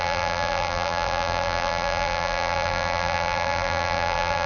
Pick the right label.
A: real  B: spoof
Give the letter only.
B